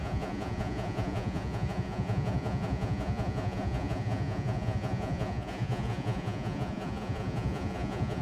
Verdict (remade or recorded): remade